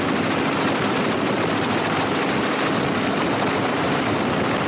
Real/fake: real